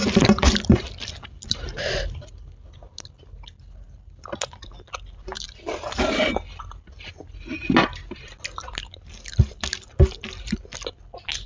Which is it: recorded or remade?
recorded